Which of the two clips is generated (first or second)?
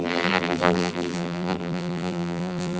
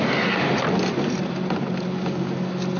first